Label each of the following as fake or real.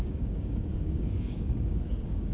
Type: fake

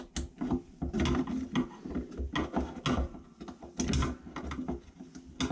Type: real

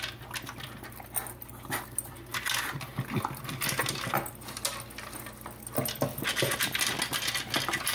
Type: real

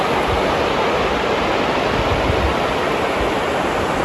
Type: real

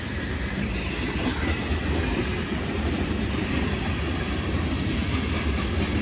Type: real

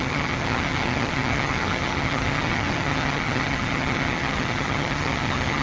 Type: fake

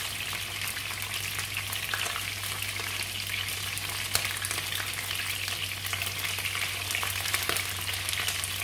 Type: real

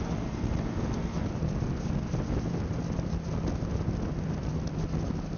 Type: real